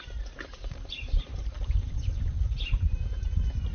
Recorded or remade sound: remade